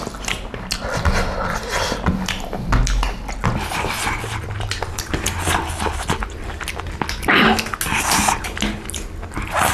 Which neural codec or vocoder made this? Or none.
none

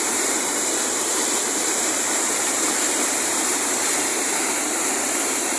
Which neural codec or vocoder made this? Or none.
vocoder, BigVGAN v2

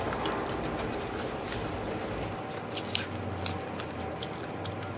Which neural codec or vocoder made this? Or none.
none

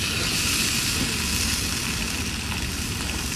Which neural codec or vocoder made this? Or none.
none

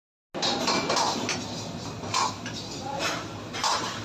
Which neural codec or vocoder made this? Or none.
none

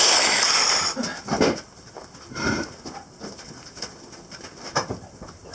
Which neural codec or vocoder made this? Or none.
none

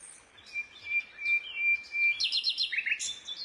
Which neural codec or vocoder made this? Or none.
none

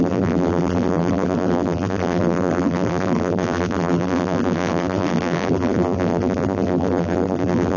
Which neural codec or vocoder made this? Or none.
vocoder, BigVGAN v2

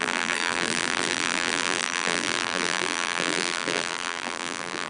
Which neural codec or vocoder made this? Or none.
vocoder, BigVGAN v2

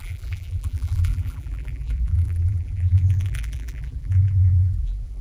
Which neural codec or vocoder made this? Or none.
vocoder, BigVGAN v2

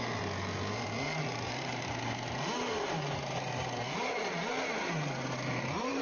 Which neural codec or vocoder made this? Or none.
vocoder, BigVGAN v2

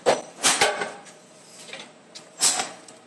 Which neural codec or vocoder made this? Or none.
vocoder, BigVGAN v2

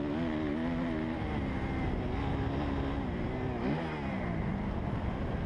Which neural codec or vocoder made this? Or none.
none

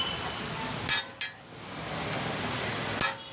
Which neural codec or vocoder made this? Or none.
none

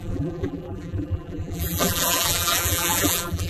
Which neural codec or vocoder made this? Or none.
vocoder, BigVGAN v2